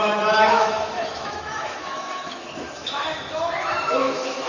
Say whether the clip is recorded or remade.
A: remade